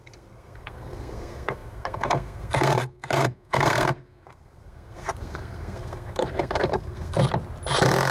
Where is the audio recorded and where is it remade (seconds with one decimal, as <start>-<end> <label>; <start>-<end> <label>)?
0.0-7.2 remade; 7.2-8.1 recorded

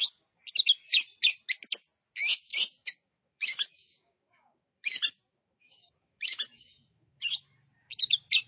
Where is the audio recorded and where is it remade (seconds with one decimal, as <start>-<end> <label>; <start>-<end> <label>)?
0.0-2.5 recorded; 2.5-7.2 remade; 7.2-8.5 recorded

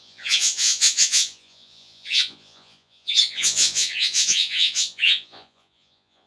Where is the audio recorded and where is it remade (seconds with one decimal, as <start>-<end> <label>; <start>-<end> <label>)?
0.0-6.3 remade

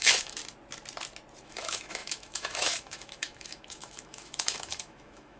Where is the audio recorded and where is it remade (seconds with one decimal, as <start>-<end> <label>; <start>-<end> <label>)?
0.0-0.4 remade; 0.4-1.4 recorded; 1.4-5.4 remade

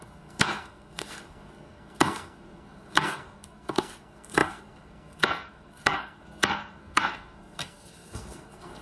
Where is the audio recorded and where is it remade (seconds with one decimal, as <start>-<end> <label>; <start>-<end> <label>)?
0.0-8.8 remade

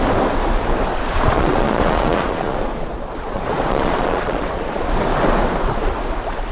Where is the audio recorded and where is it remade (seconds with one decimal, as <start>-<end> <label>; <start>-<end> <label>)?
0.0-0.9 recorded; 0.9-4.8 remade; 4.8-6.5 recorded

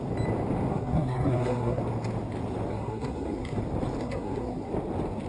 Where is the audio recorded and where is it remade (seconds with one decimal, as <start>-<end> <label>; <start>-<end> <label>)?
0.0-0.7 recorded; 0.7-1.8 remade; 1.8-2.7 recorded; 2.7-3.6 remade; 3.6-4.0 recorded; 4.0-4.7 remade; 4.7-5.3 recorded

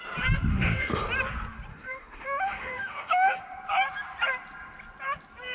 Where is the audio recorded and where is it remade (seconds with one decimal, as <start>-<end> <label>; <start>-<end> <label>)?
0.0-0.5 recorded; 0.5-1.0 remade; 1.0-1.7 recorded; 1.7-3.4 remade; 3.4-5.5 recorded